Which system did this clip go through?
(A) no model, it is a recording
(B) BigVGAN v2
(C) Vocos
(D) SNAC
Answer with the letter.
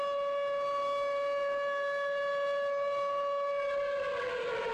A